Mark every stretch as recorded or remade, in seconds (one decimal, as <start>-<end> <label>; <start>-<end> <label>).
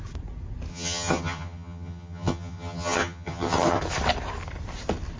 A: 0.0-0.7 recorded; 0.7-3.8 remade; 3.8-5.2 recorded